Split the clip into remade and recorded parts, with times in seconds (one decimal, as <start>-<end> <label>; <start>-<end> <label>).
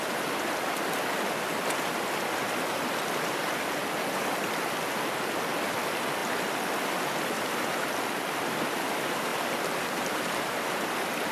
0.0-9.3 recorded; 9.3-10.2 remade; 10.2-11.3 recorded